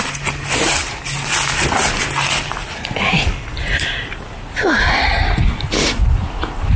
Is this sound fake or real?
real